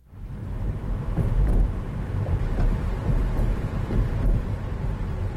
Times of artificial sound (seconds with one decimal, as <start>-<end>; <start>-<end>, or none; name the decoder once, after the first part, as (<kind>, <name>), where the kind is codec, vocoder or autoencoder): 0.0-5.4 (vocoder, BigVGAN v2)